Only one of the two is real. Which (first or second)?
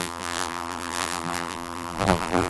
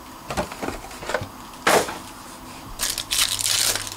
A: second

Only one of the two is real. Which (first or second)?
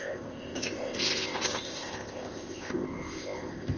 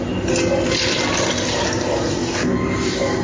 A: second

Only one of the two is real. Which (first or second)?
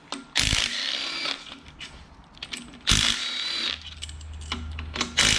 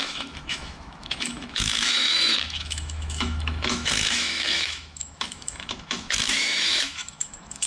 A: first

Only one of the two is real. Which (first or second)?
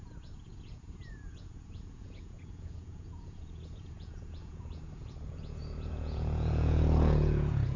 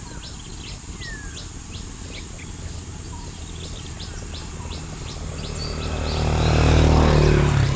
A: second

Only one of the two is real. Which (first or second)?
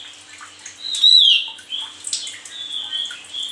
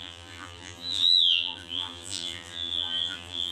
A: first